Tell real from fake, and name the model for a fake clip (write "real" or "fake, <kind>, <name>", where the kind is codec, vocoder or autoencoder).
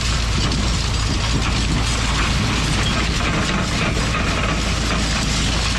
real